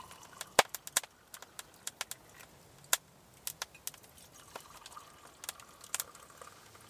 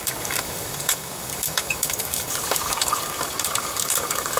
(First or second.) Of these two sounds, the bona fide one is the first